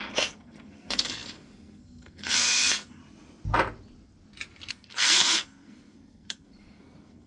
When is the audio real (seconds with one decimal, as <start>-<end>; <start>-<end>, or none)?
3.0-4.7